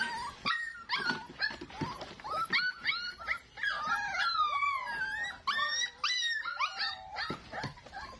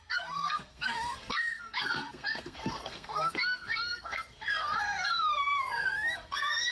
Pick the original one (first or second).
first